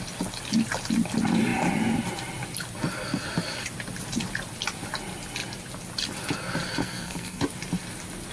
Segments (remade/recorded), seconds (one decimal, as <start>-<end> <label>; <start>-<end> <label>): 0.0-6.8 recorded; 6.8-7.4 remade; 7.4-8.3 recorded